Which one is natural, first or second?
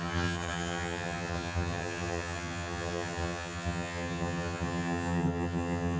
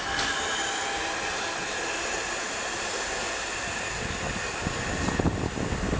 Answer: second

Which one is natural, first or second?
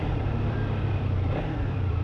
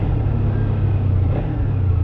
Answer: second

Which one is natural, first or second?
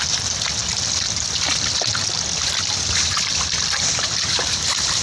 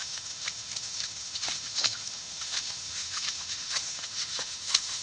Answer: first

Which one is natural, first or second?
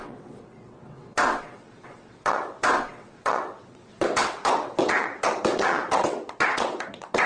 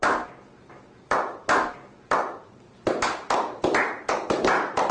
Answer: second